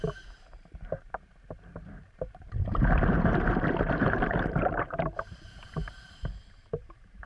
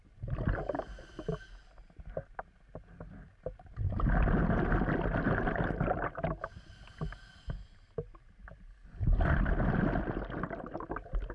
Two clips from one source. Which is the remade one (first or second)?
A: first